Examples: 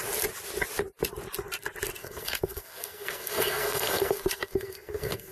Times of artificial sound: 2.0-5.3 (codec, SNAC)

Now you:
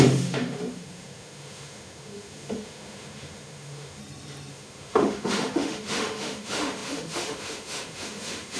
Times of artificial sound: 0.0-4.0 (autoencoder, DAC-VAE); 4.5-8.6